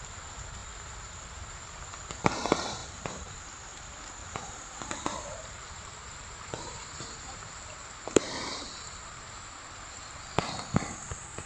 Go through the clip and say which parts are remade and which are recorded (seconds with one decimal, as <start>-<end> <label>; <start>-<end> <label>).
0.0-0.6 recorded; 0.6-1.6 remade; 1.6-2.8 recorded; 2.8-3.3 remade; 3.3-4.2 recorded; 4.2-7.6 remade; 7.6-11.5 recorded